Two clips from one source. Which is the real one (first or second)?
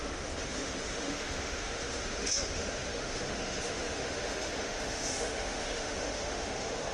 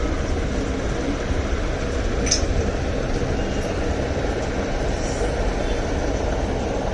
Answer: second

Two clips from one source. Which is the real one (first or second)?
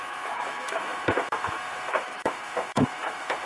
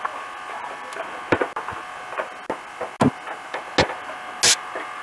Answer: second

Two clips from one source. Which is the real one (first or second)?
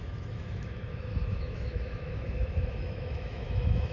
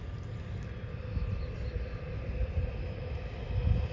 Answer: second